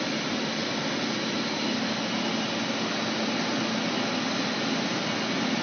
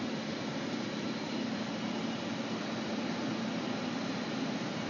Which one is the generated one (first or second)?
second